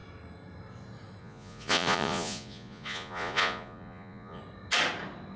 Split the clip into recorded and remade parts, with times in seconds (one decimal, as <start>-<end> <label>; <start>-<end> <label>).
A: 0.0-1.2 recorded; 1.2-4.4 remade; 4.4-5.4 recorded